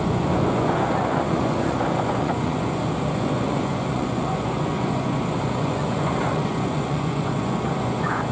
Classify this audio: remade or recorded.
remade